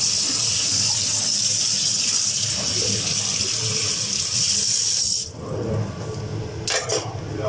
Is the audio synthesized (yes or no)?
no